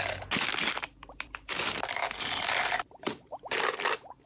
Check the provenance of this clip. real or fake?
real